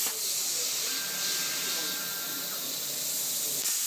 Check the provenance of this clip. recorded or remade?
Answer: recorded